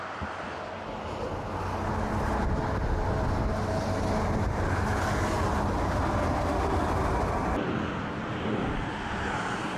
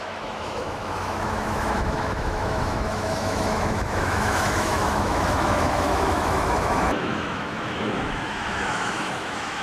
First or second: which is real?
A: first